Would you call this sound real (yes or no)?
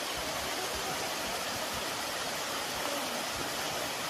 yes